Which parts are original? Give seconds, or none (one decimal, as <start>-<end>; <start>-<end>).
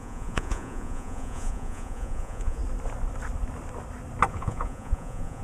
2.6-4.3